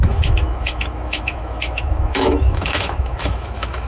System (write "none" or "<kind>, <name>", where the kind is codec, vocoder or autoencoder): autoencoder, DAC-VAE